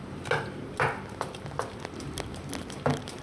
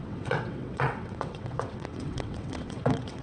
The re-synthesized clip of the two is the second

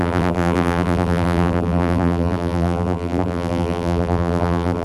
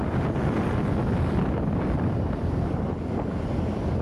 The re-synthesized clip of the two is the first